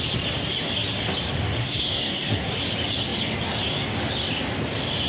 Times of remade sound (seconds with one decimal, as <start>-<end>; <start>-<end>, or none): 1.6-2.6